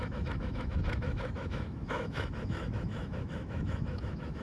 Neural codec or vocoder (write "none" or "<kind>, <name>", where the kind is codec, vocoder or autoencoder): autoencoder, DAC-VAE